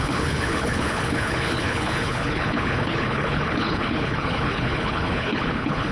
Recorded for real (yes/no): no